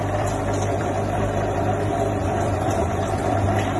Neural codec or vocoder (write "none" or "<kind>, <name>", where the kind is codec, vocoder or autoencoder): vocoder, BigVGAN v2